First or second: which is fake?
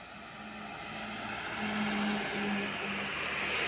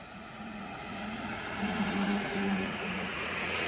second